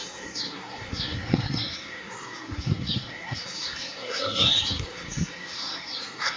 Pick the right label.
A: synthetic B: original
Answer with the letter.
A